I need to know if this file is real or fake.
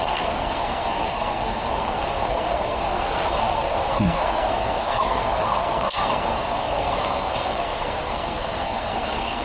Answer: fake